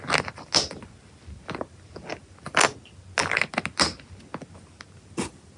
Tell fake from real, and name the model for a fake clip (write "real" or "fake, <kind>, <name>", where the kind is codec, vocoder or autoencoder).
real